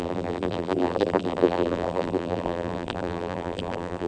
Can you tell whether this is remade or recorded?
remade